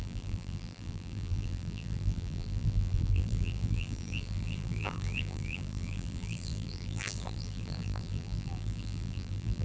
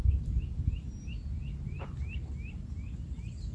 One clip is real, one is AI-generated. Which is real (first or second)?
second